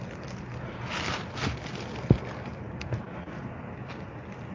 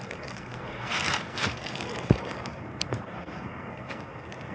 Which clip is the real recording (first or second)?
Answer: first